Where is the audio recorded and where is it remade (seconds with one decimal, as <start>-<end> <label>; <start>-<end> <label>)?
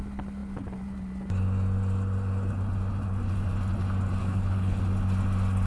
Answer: 0.0-4.2 recorded; 4.2-4.8 remade; 4.8-5.7 recorded